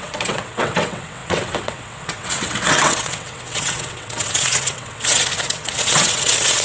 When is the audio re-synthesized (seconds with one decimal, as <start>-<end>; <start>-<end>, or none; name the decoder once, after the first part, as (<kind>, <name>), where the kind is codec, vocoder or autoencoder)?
0.0-6.6 (vocoder, WaveNeXt)

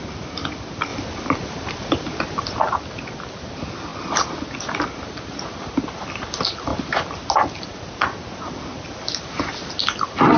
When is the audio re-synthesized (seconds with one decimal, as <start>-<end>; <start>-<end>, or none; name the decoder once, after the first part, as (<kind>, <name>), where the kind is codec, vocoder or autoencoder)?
none

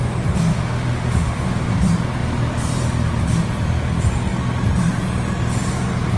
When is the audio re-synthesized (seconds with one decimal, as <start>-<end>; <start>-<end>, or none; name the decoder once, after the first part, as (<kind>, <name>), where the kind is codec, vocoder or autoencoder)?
0.5-1.7 (autoencoder, DAC-VAE)